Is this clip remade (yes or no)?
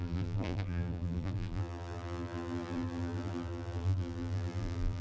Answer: yes